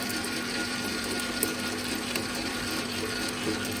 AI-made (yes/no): yes